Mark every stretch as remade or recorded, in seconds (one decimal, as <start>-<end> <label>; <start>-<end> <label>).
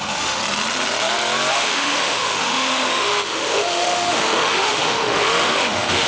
0.0-0.4 remade; 0.4-1.5 recorded; 1.5-6.1 remade